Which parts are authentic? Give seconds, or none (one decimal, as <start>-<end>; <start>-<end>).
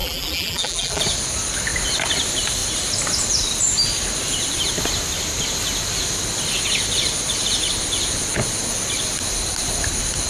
1.0-10.3